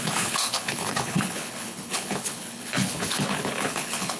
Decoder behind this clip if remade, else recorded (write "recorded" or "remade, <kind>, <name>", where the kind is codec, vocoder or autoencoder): remade, codec, HILCodec